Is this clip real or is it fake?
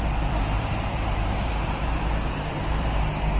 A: fake